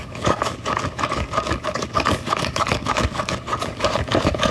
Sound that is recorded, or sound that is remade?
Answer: remade